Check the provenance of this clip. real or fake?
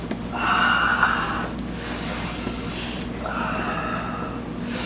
real